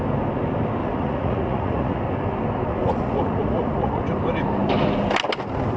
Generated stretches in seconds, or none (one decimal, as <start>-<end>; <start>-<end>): 0.8-2.0; 2.7-4.0